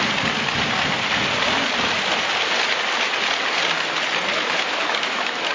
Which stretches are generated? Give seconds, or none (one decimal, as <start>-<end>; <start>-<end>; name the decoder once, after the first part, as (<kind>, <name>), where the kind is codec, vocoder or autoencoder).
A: 4.3-5.5 (autoencoder, DAC-VAE)